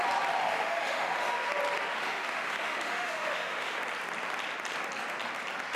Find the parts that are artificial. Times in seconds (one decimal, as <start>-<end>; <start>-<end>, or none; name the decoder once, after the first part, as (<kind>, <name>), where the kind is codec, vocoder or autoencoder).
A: 0.4-1.5 (autoencoder, DAC-VAE); 1.9-3.8